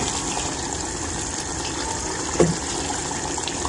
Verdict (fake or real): real